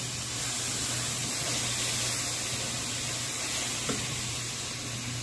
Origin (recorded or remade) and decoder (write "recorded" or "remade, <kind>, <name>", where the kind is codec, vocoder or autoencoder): recorded